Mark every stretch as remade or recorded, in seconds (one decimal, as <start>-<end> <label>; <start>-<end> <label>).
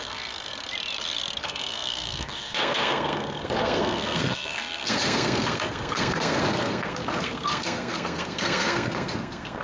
0.0-0.5 remade; 0.5-1.4 recorded; 1.4-9.6 remade